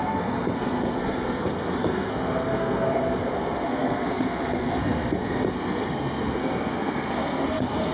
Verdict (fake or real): fake